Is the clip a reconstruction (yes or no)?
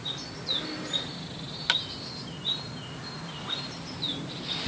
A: no